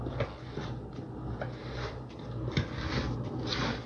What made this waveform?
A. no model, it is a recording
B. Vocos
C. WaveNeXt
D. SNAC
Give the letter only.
A